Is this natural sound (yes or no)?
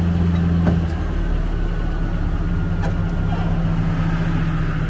yes